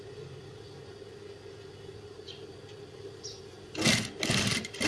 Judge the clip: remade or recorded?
recorded